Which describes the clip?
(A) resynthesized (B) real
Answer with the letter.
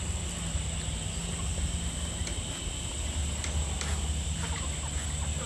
B